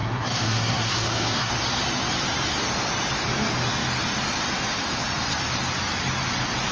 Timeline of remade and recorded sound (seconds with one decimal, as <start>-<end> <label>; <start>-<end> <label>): 0.0-1.5 remade; 1.5-6.7 recorded